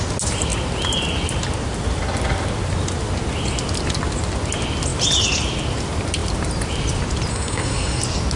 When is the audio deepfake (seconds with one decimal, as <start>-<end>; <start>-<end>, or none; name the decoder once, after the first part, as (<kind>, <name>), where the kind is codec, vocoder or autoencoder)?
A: 7.3-8.0 (codec, SNAC)